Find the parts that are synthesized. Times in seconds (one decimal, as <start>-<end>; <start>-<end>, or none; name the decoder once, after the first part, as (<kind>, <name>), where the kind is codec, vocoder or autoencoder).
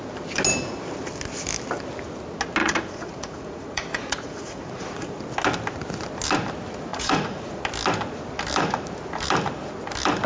2.6-5.2 (vocoder, Vocos); 6.9-7.6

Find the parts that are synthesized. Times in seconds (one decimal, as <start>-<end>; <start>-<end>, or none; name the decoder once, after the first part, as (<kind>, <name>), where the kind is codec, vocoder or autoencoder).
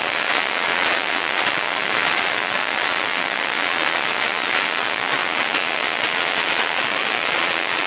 0.0-7.9 (vocoder, Vocos)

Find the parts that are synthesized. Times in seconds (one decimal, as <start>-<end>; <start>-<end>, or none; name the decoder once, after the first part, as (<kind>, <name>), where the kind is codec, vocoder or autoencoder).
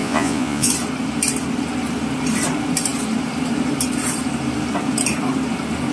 0.0-0.7 (vocoder, Vocos)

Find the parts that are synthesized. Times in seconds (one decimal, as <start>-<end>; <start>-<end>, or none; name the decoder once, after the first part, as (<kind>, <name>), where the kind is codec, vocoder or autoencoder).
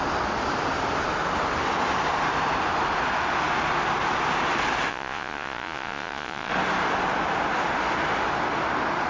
4.9-6.5 (vocoder, Vocos)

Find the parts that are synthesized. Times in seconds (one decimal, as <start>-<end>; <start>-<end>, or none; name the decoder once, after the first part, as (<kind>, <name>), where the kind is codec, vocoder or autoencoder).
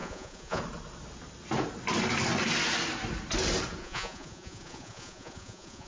0.0-0.6 (vocoder, Vocos); 3.8-5.9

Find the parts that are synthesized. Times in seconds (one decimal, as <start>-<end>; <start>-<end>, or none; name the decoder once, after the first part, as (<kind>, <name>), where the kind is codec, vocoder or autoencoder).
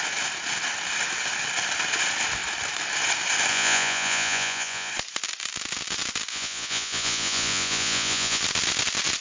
3.5-4.9 (vocoder, Vocos); 6.3-8.4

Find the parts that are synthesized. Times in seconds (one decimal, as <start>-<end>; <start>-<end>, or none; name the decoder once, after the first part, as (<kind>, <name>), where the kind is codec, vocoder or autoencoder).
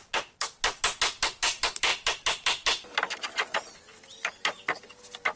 none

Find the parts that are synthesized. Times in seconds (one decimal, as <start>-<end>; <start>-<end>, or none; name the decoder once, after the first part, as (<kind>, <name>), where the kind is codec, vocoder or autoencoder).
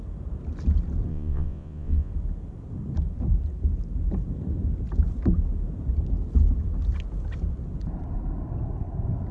1.1-2.1 (vocoder, Vocos)